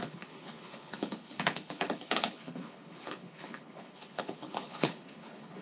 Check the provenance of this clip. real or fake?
fake